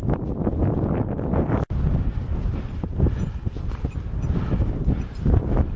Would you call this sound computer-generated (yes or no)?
no